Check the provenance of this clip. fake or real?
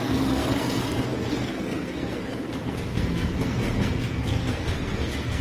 fake